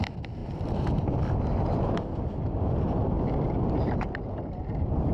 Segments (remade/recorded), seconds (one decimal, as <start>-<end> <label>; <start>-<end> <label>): 0.0-0.4 recorded; 0.4-1.4 remade; 1.4-5.1 recorded